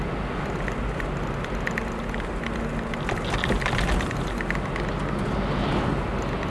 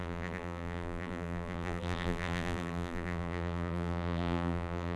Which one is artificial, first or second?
second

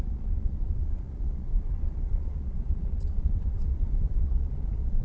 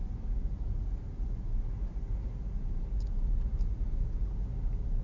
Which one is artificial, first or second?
first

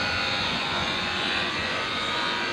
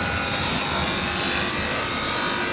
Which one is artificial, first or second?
first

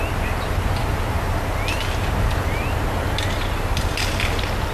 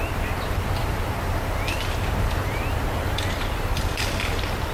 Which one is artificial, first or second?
second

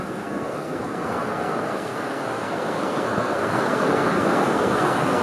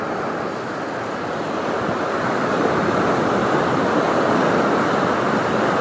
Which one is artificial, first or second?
first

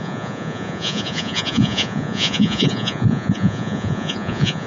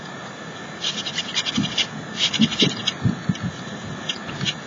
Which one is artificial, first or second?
first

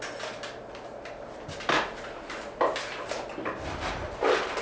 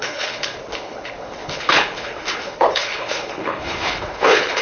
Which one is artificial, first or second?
second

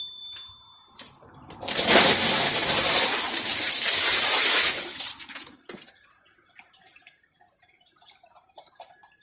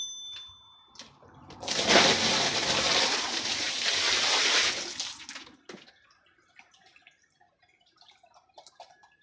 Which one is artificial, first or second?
first